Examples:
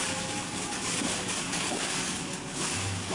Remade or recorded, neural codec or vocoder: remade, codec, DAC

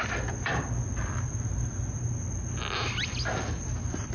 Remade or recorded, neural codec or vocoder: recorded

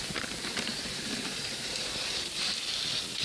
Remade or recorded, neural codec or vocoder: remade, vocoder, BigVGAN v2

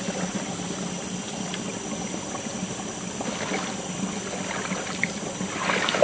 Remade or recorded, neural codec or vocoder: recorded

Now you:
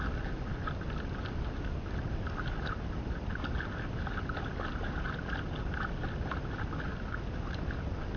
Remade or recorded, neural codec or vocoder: recorded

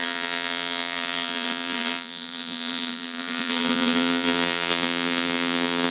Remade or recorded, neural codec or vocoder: remade, vocoder, BigVGAN v2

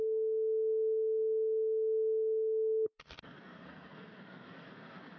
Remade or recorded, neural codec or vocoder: remade, codec, SNAC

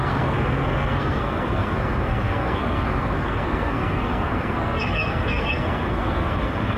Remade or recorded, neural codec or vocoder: remade, codec, SNAC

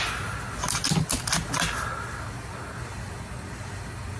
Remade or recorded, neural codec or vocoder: recorded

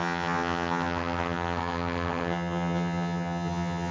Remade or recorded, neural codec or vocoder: remade, vocoder, HiFi-GAN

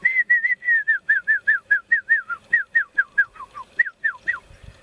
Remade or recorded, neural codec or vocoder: recorded